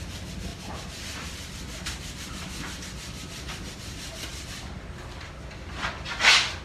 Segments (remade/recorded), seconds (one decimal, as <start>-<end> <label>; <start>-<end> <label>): 0.0-0.5 recorded; 0.5-1.3 remade; 1.3-6.6 recorded